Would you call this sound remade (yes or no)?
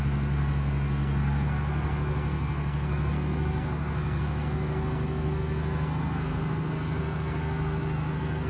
yes